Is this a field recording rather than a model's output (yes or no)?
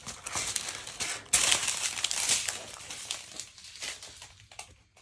yes